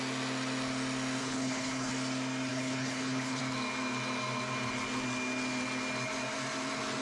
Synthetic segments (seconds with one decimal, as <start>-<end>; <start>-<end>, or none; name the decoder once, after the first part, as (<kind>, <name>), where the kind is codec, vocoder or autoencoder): 1.2-1.9 (codec, HILCodec); 2.5-3.4